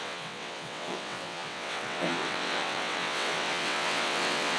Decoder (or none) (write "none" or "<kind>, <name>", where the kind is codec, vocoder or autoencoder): vocoder, WaveNeXt